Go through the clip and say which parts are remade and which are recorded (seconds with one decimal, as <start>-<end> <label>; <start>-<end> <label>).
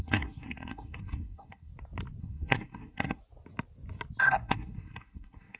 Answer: 0.0-1.7 remade; 1.7-2.2 recorded; 2.2-3.2 remade; 3.2-4.2 recorded; 4.2-5.6 remade